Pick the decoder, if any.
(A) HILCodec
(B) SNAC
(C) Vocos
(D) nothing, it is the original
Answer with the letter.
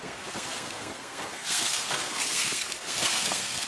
B